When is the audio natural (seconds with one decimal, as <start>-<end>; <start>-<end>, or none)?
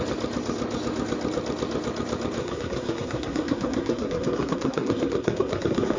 0.0-2.4